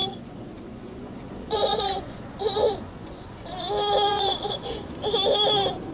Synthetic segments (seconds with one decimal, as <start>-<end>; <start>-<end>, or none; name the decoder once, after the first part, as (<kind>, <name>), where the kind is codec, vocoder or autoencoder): 0.0-3.5 (vocoder, Vocos); 4.1-5.0